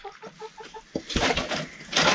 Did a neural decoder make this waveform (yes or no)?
no